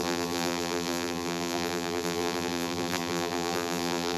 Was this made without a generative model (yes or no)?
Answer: no